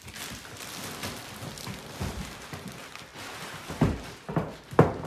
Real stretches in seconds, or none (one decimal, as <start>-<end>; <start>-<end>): 0.0-3.1

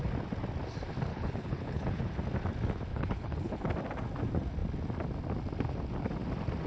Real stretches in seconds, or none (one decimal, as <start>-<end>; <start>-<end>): 0.0-1.1; 2.0-2.9; 3.7-6.7

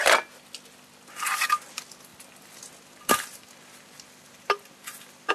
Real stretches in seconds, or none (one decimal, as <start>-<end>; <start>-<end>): 0.0-5.3

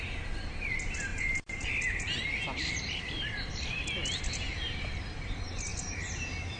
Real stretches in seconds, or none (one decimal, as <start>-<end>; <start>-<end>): 0.0-1.1; 5.1-6.6

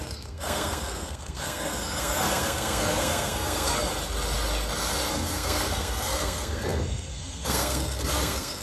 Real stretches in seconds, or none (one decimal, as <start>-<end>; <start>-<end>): 3.9-5.1

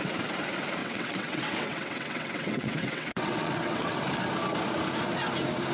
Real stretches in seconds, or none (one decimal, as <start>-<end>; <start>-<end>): 0.0-0.8; 4.2-5.7

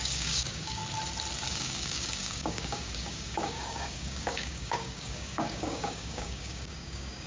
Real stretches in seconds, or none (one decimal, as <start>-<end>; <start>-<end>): 0.8-1.5